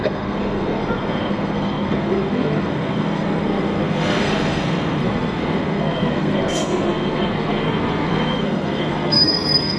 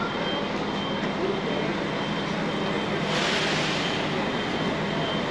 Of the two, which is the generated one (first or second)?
first